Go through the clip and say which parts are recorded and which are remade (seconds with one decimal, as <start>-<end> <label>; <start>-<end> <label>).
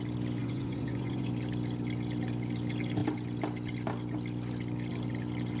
0.0-0.4 recorded; 0.4-1.3 remade; 1.3-5.6 recorded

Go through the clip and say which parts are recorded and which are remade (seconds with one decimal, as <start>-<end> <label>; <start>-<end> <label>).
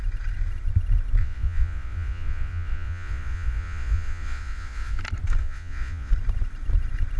0.0-1.2 recorded; 1.2-5.0 remade; 5.0-5.4 recorded; 5.4-6.1 remade; 6.1-7.2 recorded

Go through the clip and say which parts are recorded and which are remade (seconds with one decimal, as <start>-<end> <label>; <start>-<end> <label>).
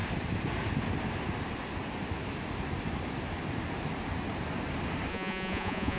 0.0-5.1 recorded; 5.1-6.0 remade